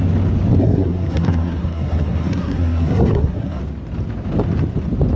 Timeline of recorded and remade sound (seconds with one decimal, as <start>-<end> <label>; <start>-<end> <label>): 0.0-0.6 recorded; 0.6-3.6 remade; 3.6-5.2 recorded